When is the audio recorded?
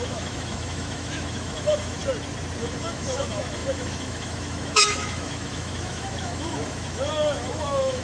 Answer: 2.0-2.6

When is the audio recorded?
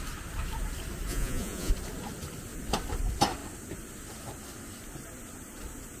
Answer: 0.0-1.1; 1.7-6.0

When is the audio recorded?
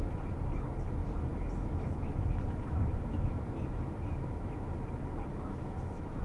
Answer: 0.0-1.0; 4.7-5.3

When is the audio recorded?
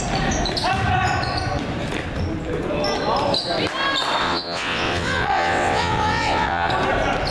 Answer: 0.0-4.2; 6.7-7.3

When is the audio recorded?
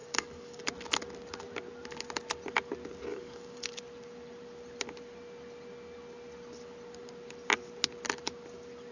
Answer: 0.6-3.1; 3.8-8.9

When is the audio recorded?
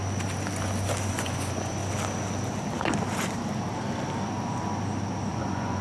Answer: 0.0-1.1; 1.8-5.3